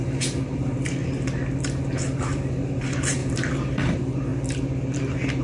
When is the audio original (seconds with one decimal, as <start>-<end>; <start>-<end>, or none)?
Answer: 1.0-2.2; 4.3-5.4